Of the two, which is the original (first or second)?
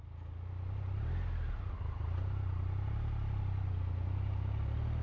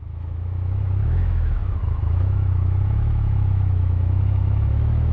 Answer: first